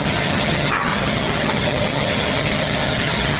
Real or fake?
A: fake